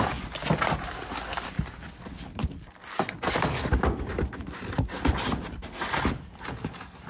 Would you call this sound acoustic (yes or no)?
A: yes